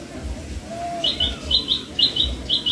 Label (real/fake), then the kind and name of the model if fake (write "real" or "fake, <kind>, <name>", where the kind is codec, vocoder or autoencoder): real